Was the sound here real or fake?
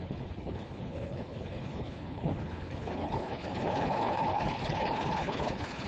fake